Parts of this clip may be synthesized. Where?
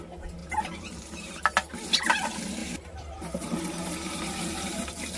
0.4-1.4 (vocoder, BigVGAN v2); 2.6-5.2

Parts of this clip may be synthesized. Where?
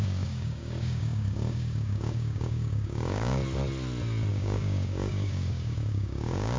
0.0-3.4 (codec, DAC); 4.3-6.6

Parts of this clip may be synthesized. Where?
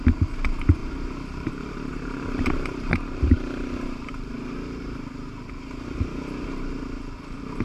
0.8-5.1 (vocoder, BigVGAN v2)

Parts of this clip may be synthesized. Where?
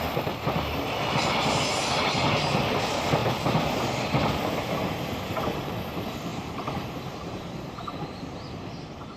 6.3-7.3 (vocoder, BigVGAN v2)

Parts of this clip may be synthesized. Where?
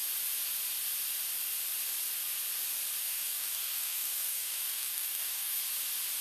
3.0-5.6 (codec, DAC)